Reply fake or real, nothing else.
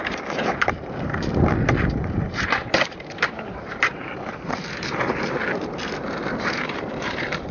fake